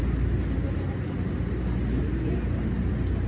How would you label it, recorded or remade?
recorded